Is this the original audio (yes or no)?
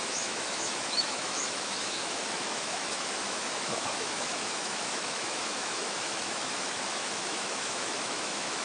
no